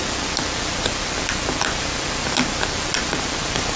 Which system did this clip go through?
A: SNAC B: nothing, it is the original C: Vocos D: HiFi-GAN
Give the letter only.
B